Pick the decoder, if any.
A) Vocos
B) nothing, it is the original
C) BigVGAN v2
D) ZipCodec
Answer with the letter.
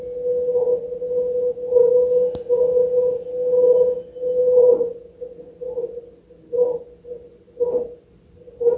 B